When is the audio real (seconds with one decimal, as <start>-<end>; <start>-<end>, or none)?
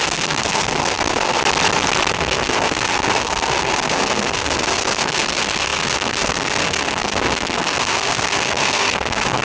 1.4-2.1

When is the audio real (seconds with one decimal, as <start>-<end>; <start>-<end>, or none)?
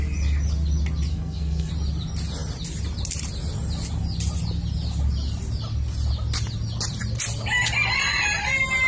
0.0-1.1; 1.7-8.9